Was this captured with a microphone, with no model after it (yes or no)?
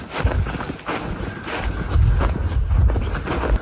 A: yes